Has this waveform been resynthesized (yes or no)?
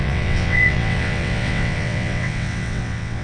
yes